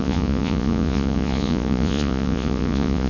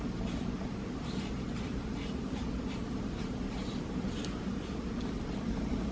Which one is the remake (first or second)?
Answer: first